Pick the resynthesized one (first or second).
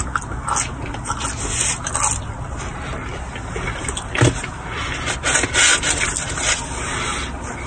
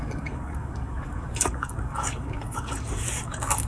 second